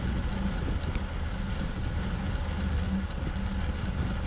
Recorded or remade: recorded